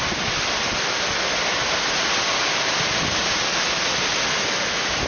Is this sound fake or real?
real